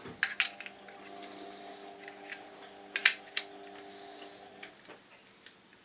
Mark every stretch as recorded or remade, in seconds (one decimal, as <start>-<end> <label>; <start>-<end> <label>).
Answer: 0.0-5.8 recorded